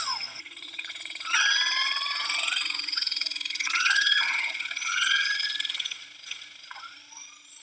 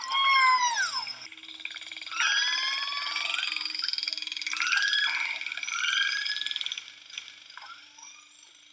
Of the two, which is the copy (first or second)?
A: first